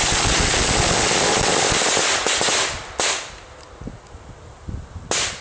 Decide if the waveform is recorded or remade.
recorded